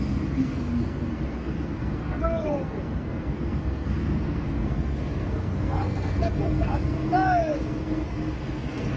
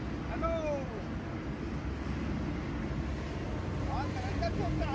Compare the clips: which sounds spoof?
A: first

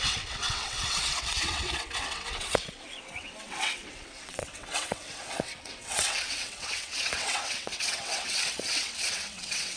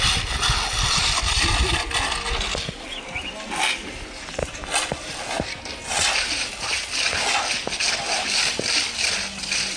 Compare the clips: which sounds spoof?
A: first